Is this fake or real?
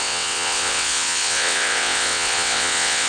fake